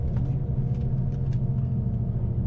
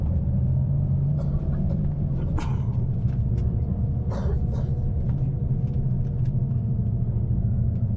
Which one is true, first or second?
first